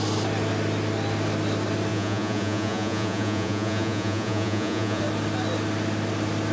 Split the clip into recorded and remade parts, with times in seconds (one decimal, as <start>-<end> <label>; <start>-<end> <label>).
0.0-1.9 recorded; 1.9-5.0 remade; 5.0-6.5 recorded